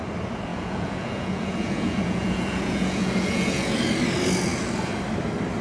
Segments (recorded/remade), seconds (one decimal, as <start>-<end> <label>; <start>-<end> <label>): 0.0-0.5 recorded; 0.5-3.9 remade; 3.9-5.6 recorded